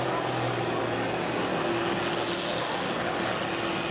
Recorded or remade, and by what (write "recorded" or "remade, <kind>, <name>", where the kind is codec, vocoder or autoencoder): recorded